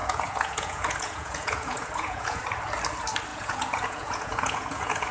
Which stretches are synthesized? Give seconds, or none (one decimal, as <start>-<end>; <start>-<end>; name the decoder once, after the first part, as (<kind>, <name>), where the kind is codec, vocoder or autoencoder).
0.0-2.4 (vocoder, Vocos); 3.3-5.1